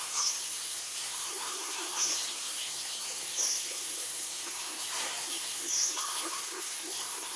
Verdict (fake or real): fake